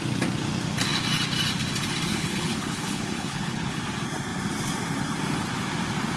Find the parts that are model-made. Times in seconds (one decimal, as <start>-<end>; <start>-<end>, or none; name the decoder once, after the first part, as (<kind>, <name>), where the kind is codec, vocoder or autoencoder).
2.1-3.8 (codec, HILCodec)